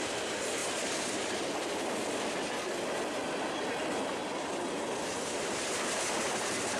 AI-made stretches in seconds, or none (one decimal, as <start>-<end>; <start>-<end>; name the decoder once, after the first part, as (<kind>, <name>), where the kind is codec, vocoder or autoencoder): none